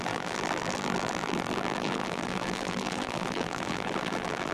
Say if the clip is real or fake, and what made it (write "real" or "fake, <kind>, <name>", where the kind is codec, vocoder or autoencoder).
fake, vocoder, BigVGAN v2